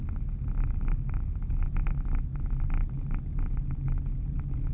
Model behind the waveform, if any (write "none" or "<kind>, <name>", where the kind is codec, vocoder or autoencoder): none